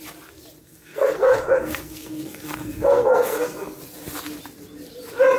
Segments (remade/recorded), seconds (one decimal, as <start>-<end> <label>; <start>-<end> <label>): 0.0-0.6 recorded; 0.6-3.8 remade; 3.8-5.4 recorded